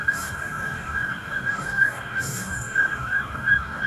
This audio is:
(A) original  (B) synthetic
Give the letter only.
B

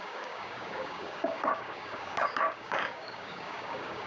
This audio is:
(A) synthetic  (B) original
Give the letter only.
A